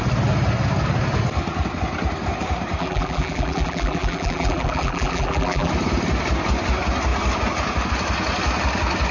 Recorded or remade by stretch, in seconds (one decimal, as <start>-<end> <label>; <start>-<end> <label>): 0.0-2.8 recorded; 2.8-5.7 remade; 5.7-9.1 recorded